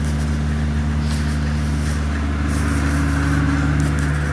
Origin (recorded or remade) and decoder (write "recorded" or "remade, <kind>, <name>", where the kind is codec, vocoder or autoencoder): recorded